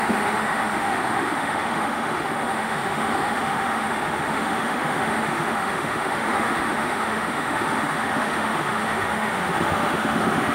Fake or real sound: fake